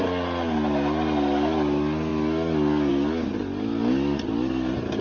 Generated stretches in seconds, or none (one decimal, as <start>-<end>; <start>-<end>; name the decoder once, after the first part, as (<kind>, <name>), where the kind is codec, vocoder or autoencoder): none